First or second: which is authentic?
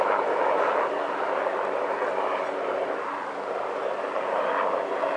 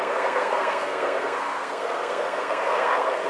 first